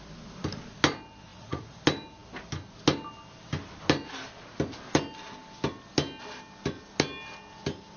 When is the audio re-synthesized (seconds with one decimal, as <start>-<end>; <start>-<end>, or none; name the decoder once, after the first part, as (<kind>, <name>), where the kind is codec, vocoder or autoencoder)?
1.3-1.8 (vocoder, Vocos)